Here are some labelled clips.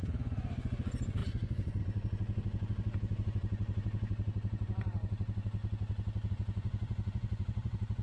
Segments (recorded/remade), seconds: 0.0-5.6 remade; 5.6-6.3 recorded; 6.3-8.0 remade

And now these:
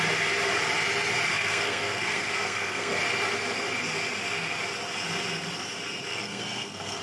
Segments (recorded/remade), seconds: 0.0-1.3 recorded; 1.3-3.0 remade; 3.0-6.1 recorded; 6.1-7.0 remade

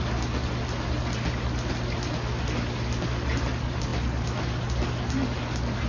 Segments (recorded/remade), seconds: 0.0-5.9 recorded

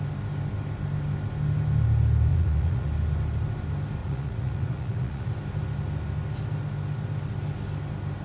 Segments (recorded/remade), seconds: 0.0-2.3 recorded; 2.3-2.9 remade; 2.9-4.0 recorded; 4.0-5.3 remade; 5.3-8.2 recorded

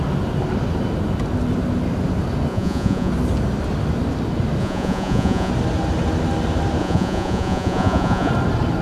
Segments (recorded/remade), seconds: 0.0-2.5 recorded; 2.5-3.1 remade; 3.1-4.6 recorded; 4.6-5.5 remade; 5.5-6.8 recorded; 6.8-8.3 remade; 8.3-8.8 recorded

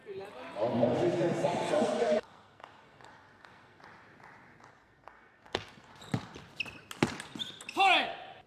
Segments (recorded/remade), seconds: 0.0-0.7 recorded; 0.7-3.8 remade; 3.8-4.7 recorded; 4.7-5.9 remade; 5.9-8.5 recorded

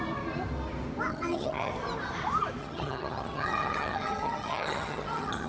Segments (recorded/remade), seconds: 0.0-1.1 recorded; 1.1-1.7 remade; 1.7-2.6 recorded; 2.6-5.5 remade

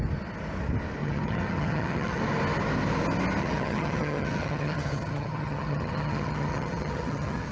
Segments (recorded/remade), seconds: 0.0-1.0 recorded; 1.0-2.2 remade; 2.2-3.4 recorded; 3.4-7.5 remade